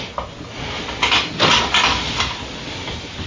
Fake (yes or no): no